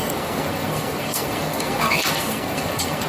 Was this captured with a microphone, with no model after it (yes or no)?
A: no